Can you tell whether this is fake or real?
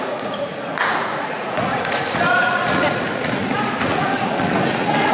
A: fake